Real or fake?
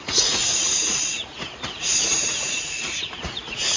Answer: fake